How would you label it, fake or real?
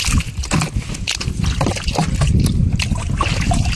real